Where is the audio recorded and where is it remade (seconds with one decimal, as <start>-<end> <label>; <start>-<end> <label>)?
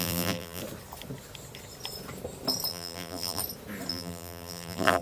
0.0-0.6 remade; 0.6-2.7 recorded; 2.7-3.4 remade; 3.4-3.9 recorded; 3.9-5.0 remade